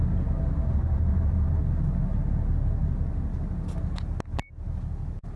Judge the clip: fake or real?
real